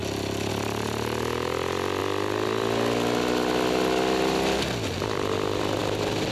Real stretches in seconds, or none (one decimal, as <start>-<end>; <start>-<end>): 0.0-6.3